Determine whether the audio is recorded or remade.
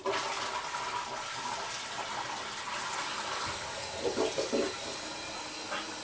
recorded